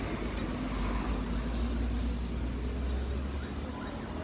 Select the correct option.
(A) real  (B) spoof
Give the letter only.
A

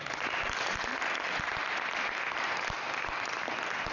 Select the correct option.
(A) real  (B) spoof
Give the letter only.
A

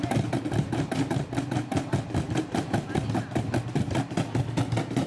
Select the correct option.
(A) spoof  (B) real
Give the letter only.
A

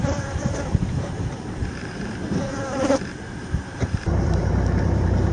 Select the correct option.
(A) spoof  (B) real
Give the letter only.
A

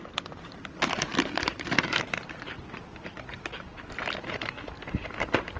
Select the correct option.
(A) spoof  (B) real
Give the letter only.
A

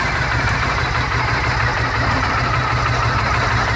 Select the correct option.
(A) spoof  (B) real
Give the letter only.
A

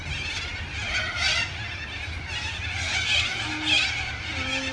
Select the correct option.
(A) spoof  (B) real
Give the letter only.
B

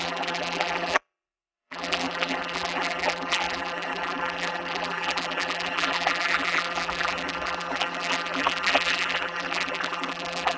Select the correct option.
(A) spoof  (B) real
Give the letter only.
A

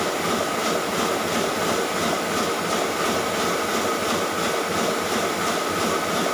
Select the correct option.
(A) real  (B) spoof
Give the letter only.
A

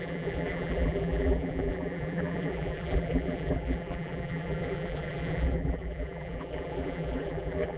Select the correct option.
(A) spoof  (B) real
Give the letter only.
A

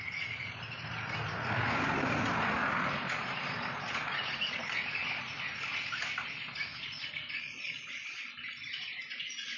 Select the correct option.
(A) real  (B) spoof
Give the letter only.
A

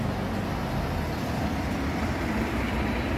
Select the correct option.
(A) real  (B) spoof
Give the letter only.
A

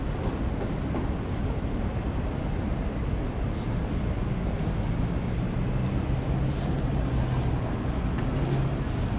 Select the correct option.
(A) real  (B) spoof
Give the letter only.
A